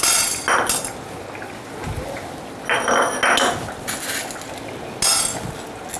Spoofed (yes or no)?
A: no